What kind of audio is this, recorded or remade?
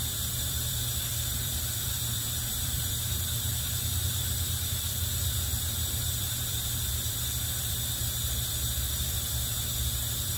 remade